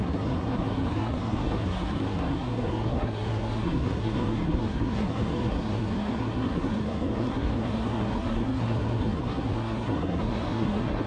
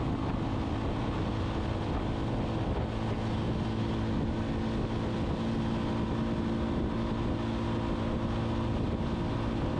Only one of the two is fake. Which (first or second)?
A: first